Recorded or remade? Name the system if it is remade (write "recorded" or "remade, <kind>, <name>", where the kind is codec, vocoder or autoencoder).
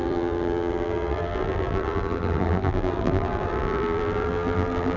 remade, vocoder, BigVGAN v2